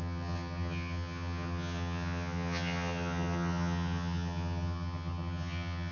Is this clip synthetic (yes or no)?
yes